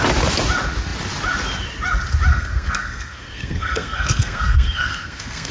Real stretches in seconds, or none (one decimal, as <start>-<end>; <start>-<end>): 0.0-2.3